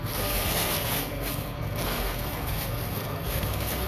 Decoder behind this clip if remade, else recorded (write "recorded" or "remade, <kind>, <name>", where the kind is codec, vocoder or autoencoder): remade, codec, SNAC